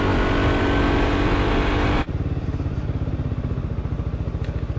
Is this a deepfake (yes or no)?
no